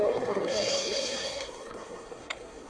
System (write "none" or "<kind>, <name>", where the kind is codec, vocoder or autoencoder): codec, SNAC